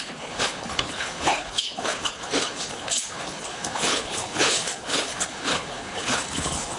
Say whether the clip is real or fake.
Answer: fake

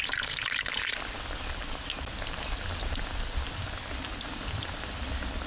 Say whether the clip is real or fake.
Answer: real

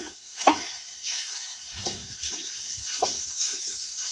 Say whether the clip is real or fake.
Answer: fake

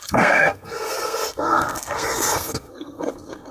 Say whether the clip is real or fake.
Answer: fake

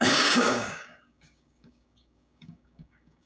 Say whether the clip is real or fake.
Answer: fake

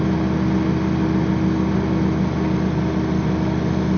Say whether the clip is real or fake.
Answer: real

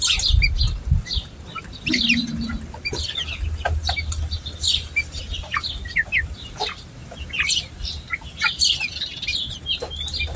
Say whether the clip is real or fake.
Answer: real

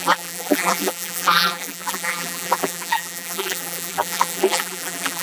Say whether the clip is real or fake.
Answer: fake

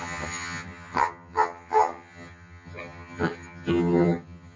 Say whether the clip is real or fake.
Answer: fake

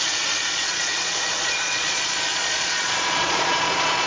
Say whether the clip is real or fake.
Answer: fake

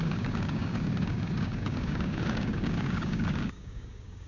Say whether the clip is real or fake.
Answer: fake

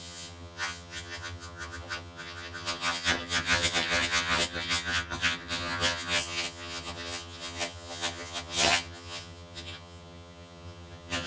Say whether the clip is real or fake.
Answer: fake